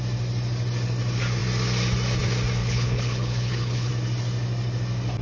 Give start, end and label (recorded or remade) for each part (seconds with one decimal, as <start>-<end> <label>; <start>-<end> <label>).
0.0-2.6 recorded; 2.6-3.9 remade; 3.9-5.2 recorded